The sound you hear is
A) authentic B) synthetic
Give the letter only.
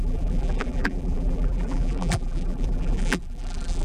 B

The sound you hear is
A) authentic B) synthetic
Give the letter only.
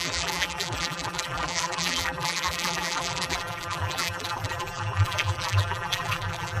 B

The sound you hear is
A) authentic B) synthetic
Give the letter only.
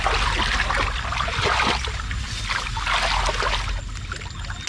A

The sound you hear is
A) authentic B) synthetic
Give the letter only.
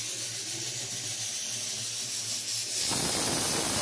A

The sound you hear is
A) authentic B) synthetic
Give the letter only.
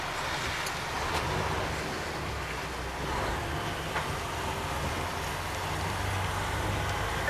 A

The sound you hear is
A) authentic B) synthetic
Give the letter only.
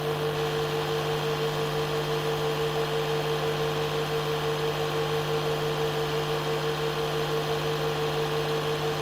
A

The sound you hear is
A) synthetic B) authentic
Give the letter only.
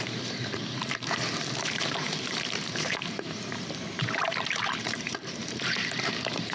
A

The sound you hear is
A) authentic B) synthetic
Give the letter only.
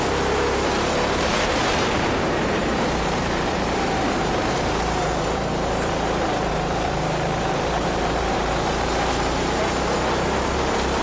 B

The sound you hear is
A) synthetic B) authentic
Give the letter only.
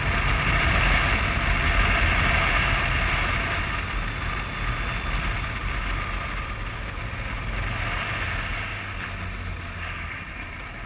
B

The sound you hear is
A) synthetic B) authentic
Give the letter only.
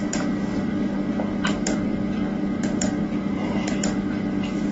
A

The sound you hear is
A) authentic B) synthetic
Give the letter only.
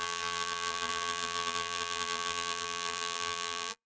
B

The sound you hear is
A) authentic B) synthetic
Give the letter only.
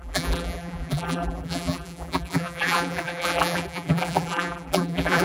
B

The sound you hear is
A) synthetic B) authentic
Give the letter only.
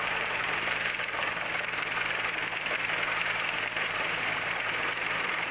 A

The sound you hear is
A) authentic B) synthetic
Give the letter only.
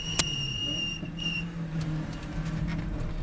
B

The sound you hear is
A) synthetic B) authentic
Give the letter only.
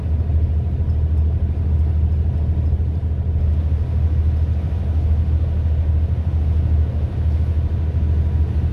B